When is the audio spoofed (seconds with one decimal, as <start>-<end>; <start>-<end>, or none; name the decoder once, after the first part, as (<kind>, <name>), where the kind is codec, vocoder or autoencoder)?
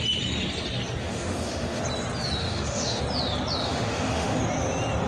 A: 1.0-1.8 (autoencoder, DAC-VAE); 2.4-3.0; 3.6-4.4